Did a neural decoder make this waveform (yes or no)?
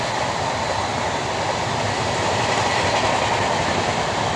no